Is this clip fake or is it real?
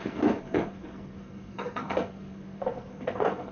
fake